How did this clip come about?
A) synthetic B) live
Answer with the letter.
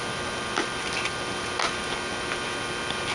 B